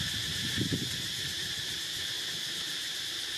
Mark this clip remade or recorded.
recorded